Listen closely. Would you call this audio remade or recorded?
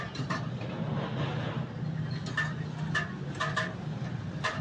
recorded